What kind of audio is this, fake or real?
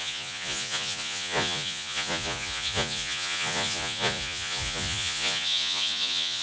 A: fake